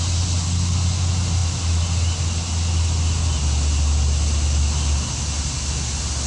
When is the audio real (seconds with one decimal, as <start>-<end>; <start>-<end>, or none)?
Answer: 0.0-6.3